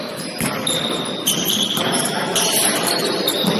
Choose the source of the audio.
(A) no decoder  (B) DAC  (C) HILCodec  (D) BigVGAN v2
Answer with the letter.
D